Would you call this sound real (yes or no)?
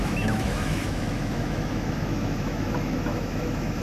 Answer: no